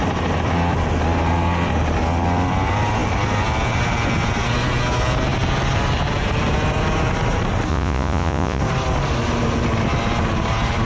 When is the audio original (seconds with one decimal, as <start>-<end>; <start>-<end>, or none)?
0.0-7.7; 8.6-10.8